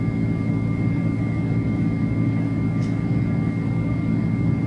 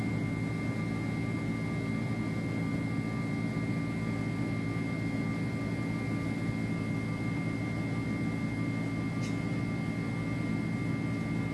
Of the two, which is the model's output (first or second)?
first